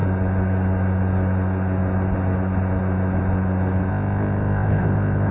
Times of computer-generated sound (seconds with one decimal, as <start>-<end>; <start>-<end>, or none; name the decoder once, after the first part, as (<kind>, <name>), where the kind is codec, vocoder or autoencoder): 3.9-5.3 (codec, ZipCodec)